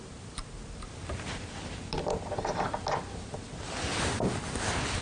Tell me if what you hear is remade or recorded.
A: recorded